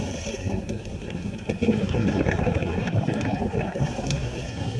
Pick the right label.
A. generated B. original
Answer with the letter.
A